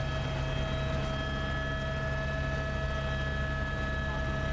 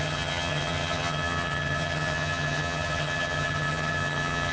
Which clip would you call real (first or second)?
first